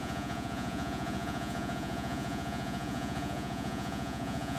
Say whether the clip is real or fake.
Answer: fake